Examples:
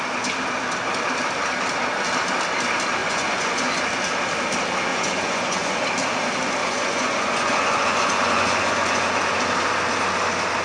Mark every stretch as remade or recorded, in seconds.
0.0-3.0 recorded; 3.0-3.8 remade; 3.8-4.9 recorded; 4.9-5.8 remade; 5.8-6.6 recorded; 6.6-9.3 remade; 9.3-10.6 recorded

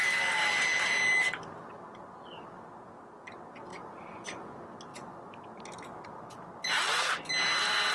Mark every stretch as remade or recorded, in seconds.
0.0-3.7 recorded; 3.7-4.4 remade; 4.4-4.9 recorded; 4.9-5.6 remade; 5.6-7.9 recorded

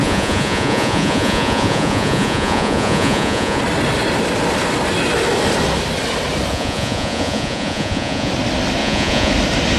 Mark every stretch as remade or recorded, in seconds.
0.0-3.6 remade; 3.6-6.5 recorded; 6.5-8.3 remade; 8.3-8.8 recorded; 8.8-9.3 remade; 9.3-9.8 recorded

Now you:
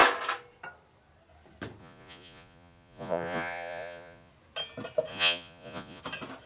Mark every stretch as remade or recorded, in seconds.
0.0-1.8 recorded; 1.8-4.3 remade; 4.3-5.1 recorded; 5.1-6.0 remade; 6.0-6.5 recorded